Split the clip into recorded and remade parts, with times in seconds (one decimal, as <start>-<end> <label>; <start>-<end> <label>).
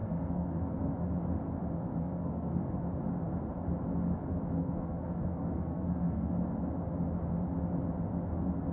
0.0-0.9 remade; 0.9-2.0 recorded; 2.0-2.7 remade; 2.7-4.6 recorded; 4.6-6.3 remade; 6.3-8.7 recorded